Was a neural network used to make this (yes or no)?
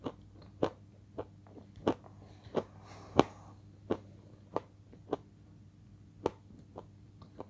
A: no